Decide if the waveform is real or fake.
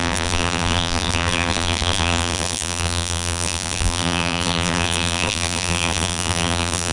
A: fake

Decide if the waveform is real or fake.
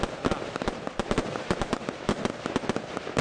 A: real